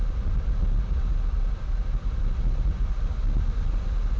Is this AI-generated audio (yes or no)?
no